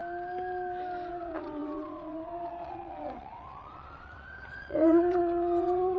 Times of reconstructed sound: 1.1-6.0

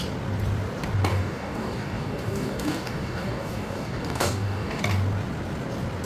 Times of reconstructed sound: 1.1-4.8

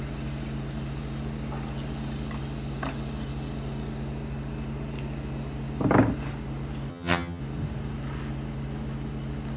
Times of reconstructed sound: 6.9-7.4

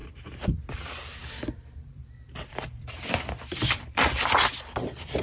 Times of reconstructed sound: 1.2-4.3

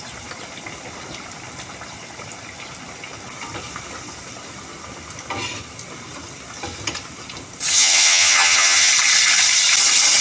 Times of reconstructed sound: 7.7-8.9

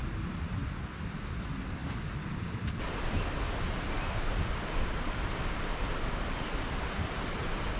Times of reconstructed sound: 1.8-4.5

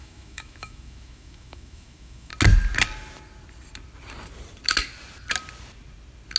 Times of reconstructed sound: 0.0-2.3